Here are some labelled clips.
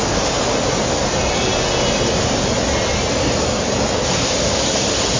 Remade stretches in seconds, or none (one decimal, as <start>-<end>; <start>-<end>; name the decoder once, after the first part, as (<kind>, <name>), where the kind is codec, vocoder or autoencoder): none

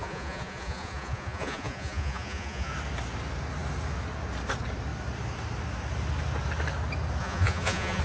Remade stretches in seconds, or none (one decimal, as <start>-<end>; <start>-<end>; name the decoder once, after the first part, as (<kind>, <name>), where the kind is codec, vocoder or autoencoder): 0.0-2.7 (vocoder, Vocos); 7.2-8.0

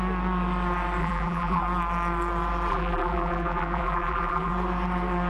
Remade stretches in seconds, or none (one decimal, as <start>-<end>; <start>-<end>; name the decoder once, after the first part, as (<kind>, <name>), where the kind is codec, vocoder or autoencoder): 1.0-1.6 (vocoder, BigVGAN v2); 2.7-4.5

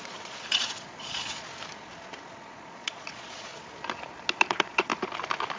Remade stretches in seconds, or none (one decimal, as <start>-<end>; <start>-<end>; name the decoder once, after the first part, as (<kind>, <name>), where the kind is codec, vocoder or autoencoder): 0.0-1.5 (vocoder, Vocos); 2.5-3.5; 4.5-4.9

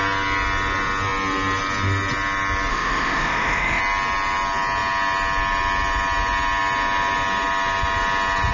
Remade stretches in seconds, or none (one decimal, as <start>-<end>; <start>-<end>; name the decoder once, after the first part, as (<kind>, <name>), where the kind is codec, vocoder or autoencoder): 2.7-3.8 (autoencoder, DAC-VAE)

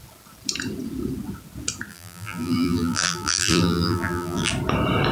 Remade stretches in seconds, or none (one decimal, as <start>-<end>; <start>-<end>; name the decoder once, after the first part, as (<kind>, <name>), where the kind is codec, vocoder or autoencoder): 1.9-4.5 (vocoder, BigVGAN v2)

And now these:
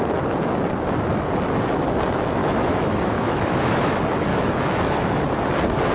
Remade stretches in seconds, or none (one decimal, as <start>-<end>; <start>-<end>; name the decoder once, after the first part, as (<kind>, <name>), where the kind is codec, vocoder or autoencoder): 2.4-3.9 (autoencoder, DAC-VAE); 4.3-5.2